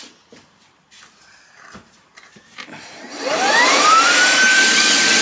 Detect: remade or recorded remade